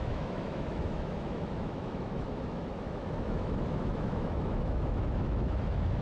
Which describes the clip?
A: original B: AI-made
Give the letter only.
B